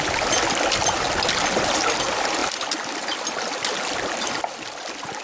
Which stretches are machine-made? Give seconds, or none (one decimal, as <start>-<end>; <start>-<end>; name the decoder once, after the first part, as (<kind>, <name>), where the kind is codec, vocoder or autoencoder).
none